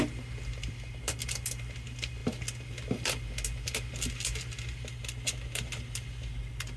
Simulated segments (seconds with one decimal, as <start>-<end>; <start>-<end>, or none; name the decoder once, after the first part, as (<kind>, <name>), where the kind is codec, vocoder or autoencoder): none